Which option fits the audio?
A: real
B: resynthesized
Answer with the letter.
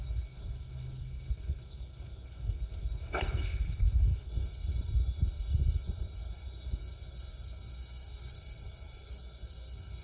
B